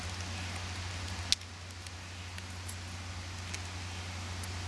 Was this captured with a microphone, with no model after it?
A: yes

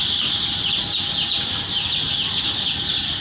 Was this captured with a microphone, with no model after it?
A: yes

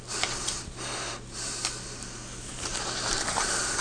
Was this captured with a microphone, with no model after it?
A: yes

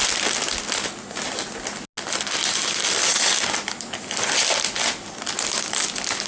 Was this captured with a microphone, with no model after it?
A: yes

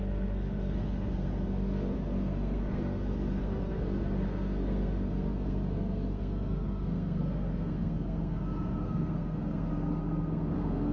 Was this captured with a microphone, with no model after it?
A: no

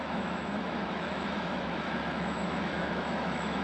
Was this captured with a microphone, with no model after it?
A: no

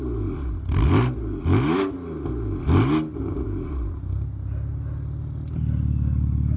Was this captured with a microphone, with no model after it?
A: yes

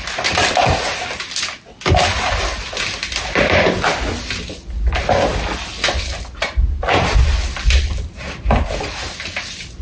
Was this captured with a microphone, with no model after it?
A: yes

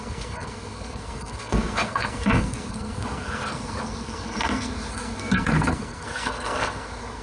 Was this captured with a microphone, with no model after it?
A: no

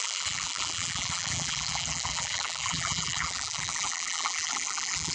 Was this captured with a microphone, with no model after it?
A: no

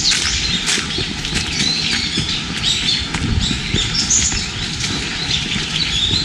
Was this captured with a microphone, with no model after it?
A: yes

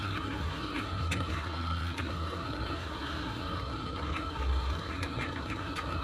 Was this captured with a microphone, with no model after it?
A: no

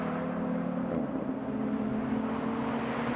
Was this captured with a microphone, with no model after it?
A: yes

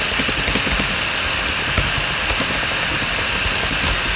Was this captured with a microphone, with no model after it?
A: yes